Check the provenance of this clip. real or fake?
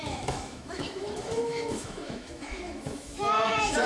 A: fake